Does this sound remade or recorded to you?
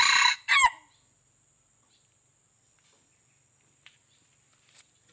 recorded